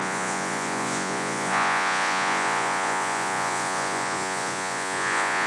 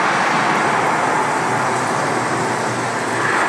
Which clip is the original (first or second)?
second